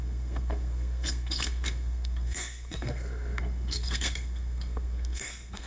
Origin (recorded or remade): remade